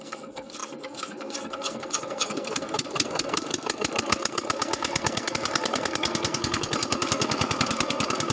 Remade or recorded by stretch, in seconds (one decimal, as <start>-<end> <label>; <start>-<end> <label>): 0.0-8.3 remade